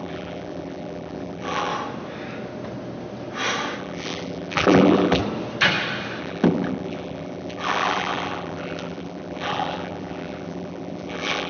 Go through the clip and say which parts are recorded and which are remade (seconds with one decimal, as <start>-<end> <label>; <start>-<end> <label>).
0.0-1.7 remade; 1.7-3.8 recorded; 3.8-5.2 remade; 5.2-6.2 recorded; 6.2-11.5 remade